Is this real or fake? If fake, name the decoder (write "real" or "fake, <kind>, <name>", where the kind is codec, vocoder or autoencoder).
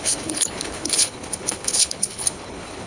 fake, codec, HILCodec